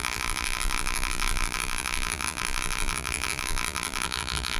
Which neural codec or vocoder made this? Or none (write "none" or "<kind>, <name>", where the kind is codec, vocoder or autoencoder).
vocoder, BigVGAN v2